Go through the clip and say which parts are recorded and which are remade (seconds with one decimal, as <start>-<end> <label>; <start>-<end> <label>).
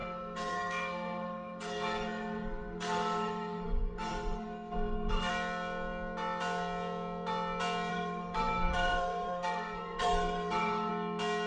0.0-5.3 remade; 5.3-7.9 recorded; 7.9-10.9 remade; 10.9-11.5 recorded